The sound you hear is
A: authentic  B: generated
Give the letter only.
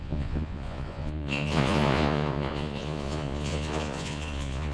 B